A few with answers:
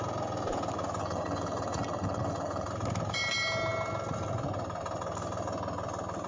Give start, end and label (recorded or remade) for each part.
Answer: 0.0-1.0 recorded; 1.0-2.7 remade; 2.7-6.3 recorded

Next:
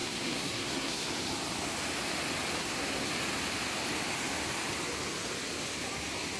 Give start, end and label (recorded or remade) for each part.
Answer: 0.0-1.1 remade; 1.1-2.6 recorded; 2.6-3.1 remade; 3.1-6.4 recorded

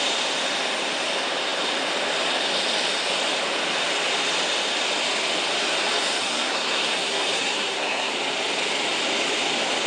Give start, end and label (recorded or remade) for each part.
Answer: 0.0-6.2 recorded; 6.2-8.1 remade; 8.1-9.9 recorded

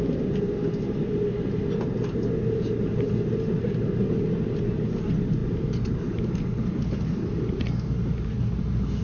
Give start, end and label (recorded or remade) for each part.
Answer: 0.0-9.0 recorded

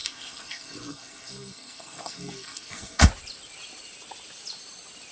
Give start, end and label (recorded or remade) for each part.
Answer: 0.0-3.1 remade; 3.1-5.1 recorded

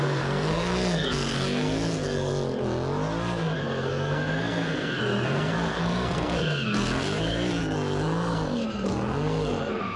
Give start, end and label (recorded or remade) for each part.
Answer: 0.0-2.3 remade; 2.3-3.6 recorded; 3.6-10.0 remade